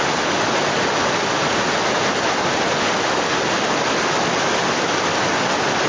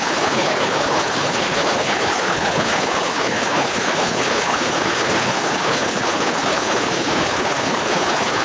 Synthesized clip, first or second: second